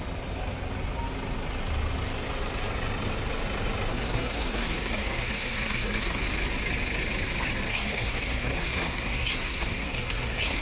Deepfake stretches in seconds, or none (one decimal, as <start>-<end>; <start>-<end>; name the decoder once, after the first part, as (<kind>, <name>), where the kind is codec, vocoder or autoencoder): 3.9-6.2 (codec, SNAC); 7.7-10.6